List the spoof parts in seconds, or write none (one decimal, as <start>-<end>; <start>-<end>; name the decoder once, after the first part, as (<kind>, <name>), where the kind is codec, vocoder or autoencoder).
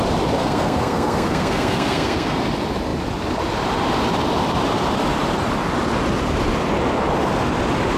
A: 0.4-2.4 (codec, SNAC)